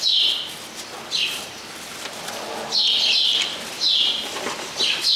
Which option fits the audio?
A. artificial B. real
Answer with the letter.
B